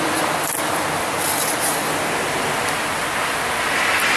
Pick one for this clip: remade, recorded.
recorded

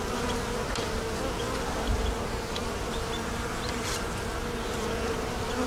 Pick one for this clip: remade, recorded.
recorded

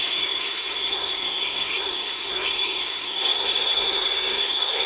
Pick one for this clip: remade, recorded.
remade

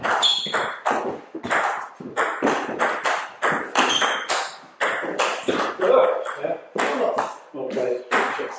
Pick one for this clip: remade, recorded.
remade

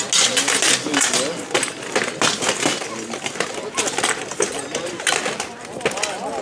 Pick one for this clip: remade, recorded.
recorded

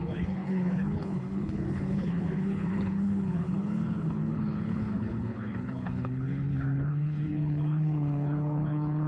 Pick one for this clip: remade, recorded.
remade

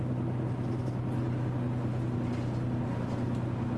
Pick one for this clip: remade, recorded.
recorded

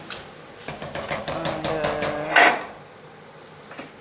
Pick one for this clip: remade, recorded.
recorded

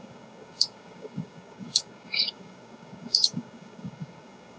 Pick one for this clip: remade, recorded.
remade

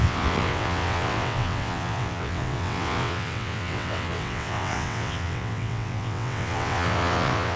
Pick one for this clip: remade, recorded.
remade